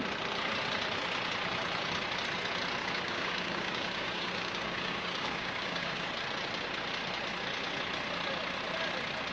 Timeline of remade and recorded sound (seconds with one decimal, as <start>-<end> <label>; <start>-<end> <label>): 0.0-2.8 recorded; 2.8-6.1 remade; 6.1-9.3 recorded